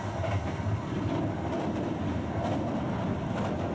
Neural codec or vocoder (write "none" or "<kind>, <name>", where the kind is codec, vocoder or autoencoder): none